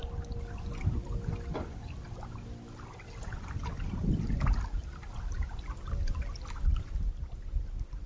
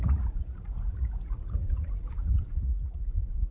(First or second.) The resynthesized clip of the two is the second